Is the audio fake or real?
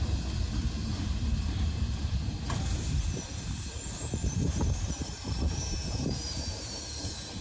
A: fake